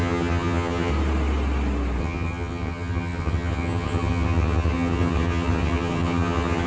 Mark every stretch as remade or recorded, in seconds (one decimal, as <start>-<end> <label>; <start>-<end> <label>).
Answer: 0.0-0.9 remade; 0.9-2.0 recorded; 2.0-6.7 remade